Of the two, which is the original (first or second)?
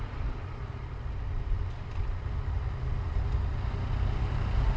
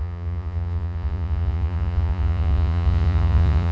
first